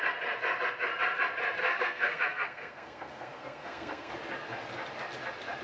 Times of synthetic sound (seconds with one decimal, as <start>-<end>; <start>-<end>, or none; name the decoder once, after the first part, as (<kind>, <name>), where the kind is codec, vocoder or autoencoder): 1.6-4.1 (codec, SNAC)